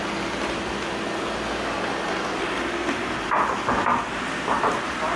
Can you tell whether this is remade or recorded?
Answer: recorded